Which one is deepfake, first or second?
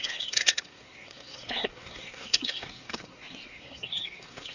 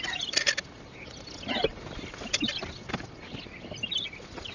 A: first